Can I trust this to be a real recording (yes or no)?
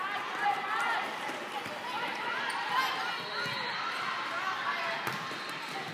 yes